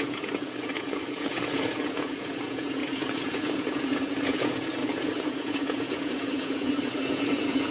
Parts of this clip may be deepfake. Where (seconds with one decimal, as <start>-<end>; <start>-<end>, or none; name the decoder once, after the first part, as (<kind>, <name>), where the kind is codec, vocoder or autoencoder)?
0.0-7.7 (vocoder, Vocos)